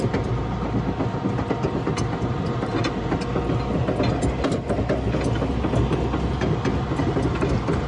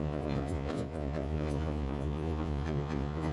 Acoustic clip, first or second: first